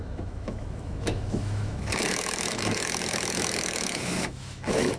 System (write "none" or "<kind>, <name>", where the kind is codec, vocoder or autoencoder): autoencoder, DAC-VAE